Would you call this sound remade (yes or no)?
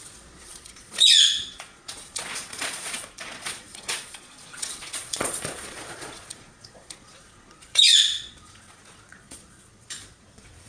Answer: yes